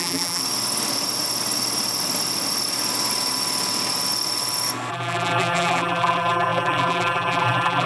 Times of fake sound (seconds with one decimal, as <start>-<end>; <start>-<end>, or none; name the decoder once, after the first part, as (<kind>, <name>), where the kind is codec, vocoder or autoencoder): 0.0-0.4 (vocoder, BigVGAN v2); 4.9-7.9